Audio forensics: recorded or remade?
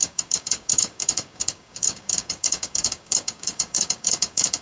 remade